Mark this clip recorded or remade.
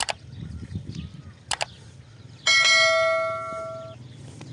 recorded